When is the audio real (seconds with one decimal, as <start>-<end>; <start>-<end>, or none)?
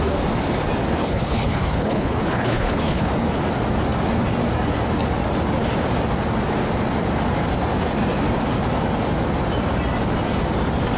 0.0-1.0; 3.1-11.0